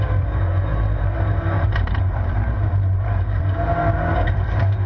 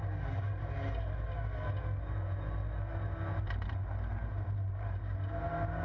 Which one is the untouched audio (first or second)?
second